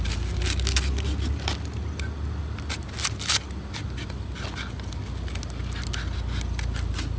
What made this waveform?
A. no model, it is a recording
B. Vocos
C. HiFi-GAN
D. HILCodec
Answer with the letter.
A